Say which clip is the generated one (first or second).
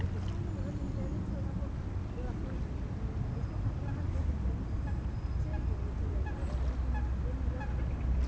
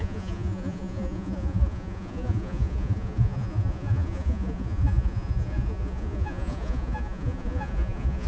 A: second